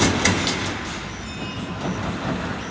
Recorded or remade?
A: recorded